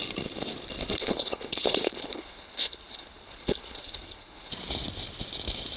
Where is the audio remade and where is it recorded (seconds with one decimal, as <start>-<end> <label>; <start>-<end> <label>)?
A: 0.0-1.0 recorded; 1.0-4.5 remade; 4.5-5.8 recorded